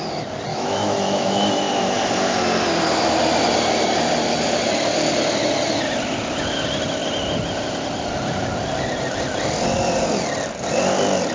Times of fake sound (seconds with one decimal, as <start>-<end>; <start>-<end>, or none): 0.5-1.7